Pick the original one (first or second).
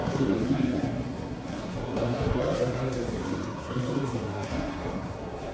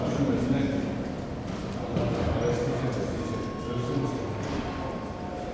second